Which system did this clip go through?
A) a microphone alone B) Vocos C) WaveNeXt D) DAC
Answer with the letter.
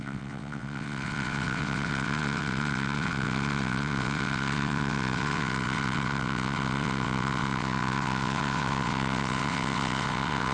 C